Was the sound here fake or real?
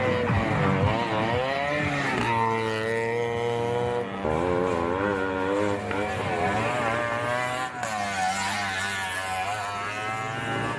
real